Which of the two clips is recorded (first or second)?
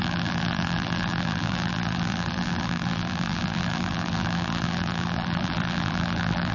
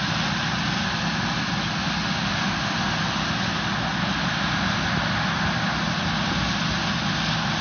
second